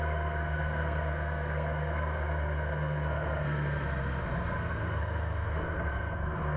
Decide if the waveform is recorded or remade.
remade